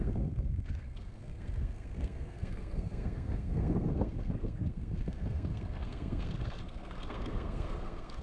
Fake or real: fake